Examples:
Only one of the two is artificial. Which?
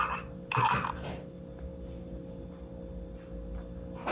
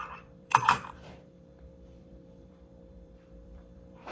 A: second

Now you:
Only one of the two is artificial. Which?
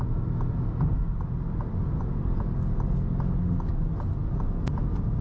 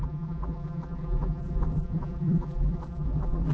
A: second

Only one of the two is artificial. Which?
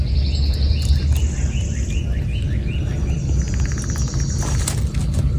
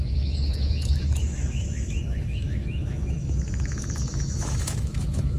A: second